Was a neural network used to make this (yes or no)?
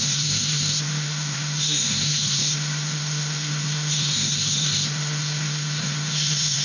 yes